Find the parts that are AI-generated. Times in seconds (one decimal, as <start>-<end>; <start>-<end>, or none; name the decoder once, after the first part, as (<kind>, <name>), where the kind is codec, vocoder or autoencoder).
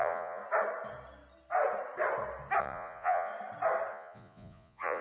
0.0-0.4 (vocoder, Vocos); 2.6-3.3; 3.9-5.0